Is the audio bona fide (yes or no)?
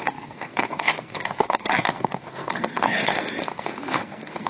no